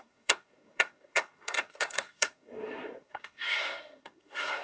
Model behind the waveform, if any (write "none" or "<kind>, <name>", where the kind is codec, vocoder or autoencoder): codec, SNAC